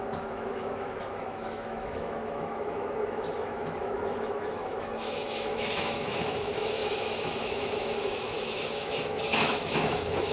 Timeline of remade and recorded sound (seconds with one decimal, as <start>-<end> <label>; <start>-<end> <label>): 0.0-10.3 remade